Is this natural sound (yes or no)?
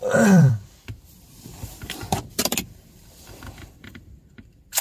no